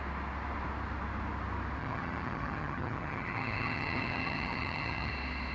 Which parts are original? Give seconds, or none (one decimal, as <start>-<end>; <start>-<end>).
0.0-1.8; 5.1-5.5